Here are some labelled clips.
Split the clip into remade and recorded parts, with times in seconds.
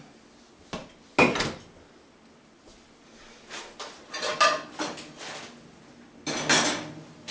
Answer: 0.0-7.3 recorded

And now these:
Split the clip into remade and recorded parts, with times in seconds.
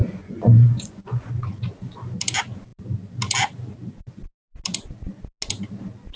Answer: 0.0-1.3 remade; 1.3-6.2 recorded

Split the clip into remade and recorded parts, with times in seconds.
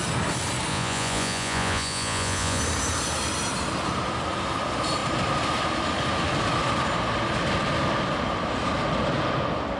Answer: 0.0-0.7 recorded; 0.7-2.6 remade; 2.6-9.8 recorded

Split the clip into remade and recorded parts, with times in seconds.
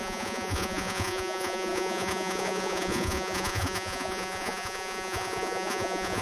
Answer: 0.0-6.2 remade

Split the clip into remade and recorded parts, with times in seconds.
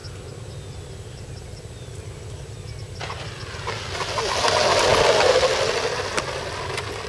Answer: 0.0-7.1 recorded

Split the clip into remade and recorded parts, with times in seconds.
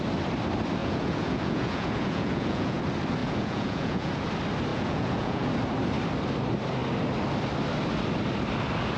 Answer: 0.0-0.8 recorded; 0.8-2.8 remade; 2.8-3.2 recorded; 3.2-4.1 remade; 4.1-4.7 recorded; 4.7-5.5 remade; 5.5-9.0 recorded